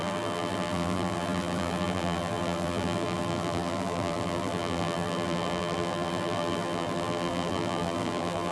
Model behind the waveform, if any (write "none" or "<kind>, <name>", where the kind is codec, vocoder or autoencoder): vocoder, BigVGAN v2